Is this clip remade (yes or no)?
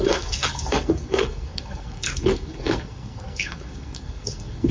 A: yes